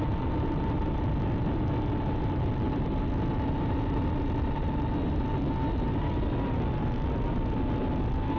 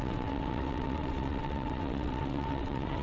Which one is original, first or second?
first